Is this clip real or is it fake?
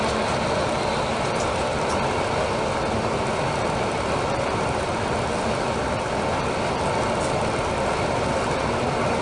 real